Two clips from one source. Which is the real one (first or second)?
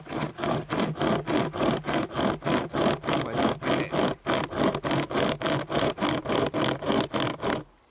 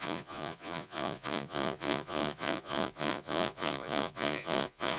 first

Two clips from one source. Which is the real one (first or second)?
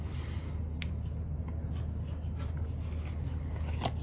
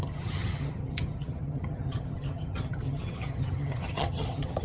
first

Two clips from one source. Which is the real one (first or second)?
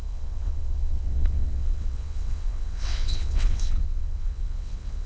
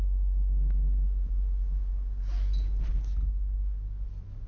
second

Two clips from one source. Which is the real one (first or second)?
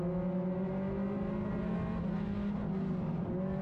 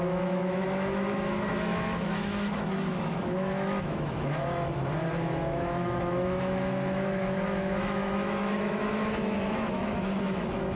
first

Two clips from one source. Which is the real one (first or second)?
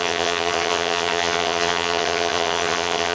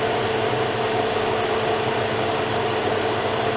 second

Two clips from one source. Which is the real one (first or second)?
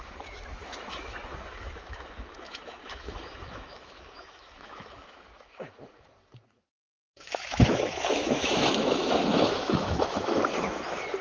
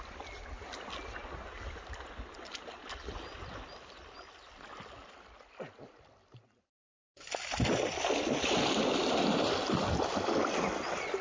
second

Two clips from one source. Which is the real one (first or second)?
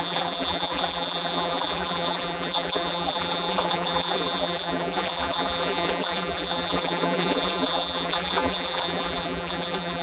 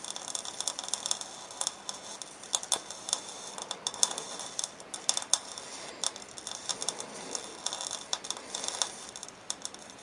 second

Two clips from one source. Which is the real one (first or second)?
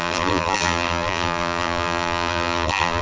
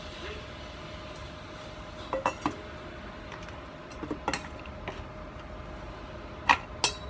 second